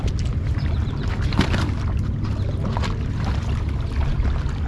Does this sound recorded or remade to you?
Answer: recorded